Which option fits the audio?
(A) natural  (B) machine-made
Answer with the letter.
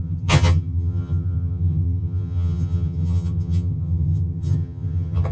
B